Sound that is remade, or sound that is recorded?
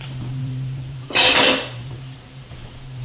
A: remade